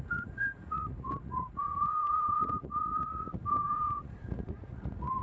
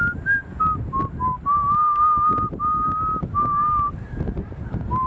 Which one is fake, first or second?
first